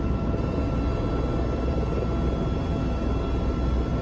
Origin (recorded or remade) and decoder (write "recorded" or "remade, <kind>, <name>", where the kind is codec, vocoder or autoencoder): recorded